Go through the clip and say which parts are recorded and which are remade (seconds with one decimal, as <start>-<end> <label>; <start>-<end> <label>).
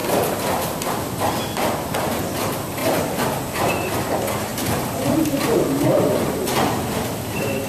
0.0-1.2 remade; 1.2-2.8 recorded; 2.8-3.7 remade; 3.7-4.5 recorded; 4.5-7.7 remade